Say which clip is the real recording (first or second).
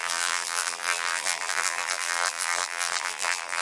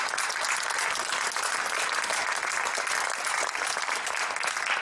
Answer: second